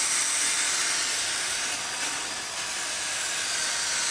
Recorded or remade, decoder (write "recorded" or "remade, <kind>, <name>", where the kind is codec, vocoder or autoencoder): recorded